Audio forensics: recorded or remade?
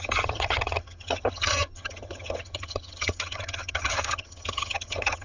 remade